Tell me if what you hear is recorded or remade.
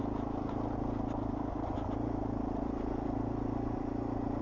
recorded